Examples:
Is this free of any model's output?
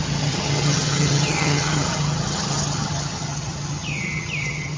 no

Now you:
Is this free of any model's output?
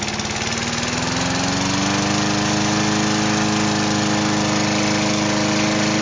yes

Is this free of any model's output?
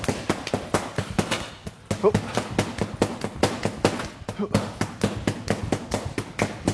yes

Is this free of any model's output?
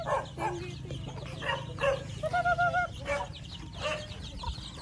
yes